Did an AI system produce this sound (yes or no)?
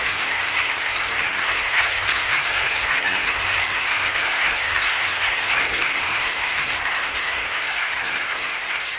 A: yes